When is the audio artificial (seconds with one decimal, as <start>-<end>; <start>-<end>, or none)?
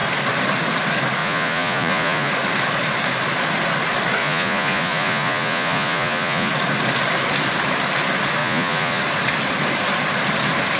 1.2-2.3; 4.2-6.5; 8.4-9.0